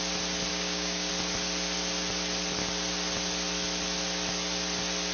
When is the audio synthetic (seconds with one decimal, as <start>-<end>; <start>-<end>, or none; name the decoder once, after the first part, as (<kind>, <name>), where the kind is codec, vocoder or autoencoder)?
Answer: 0.5-1.1 (codec, DAC)